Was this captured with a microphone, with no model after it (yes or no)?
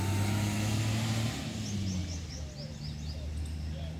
yes